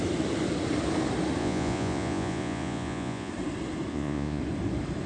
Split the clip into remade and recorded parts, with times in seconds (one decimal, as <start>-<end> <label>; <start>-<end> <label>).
0.0-1.4 recorded; 1.4-3.3 remade; 3.3-3.9 recorded; 3.9-4.4 remade; 4.4-5.1 recorded